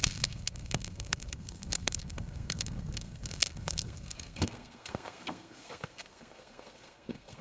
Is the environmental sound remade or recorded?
remade